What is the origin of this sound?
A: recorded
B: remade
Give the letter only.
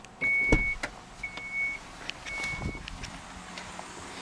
A